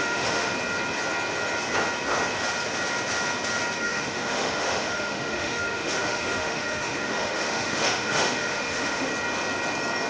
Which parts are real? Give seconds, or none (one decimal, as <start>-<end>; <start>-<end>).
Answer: 0.5-3.8; 9.1-10.1